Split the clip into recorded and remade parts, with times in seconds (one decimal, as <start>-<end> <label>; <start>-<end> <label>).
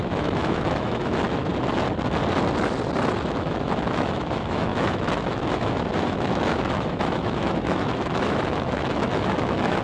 0.0-1.5 remade; 1.5-3.3 recorded; 3.3-9.8 remade